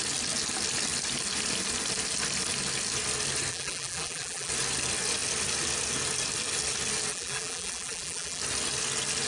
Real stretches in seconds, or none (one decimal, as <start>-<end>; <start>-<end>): 0.0-3.5; 4.5-7.1; 8.4-9.3